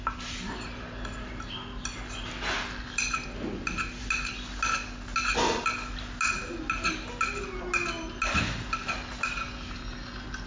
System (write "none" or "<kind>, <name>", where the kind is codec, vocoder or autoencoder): none